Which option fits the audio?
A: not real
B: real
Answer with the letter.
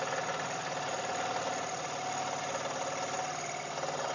B